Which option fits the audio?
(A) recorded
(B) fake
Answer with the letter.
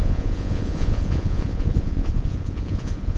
B